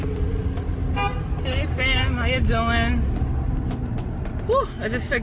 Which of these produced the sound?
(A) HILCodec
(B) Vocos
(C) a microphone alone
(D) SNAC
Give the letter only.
C